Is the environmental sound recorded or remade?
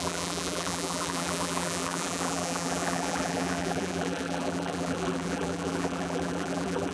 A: remade